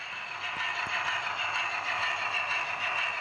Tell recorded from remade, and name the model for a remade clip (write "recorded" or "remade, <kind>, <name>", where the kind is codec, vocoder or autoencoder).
recorded